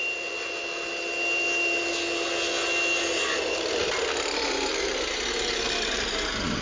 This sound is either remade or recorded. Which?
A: recorded